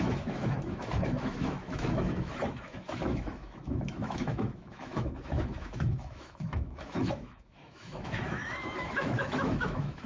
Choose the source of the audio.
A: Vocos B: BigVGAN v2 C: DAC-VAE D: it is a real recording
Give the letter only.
C